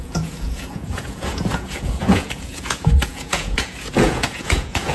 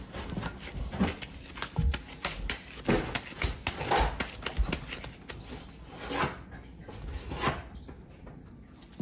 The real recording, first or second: second